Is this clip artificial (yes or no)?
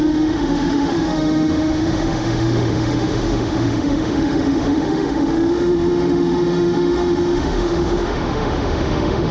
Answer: yes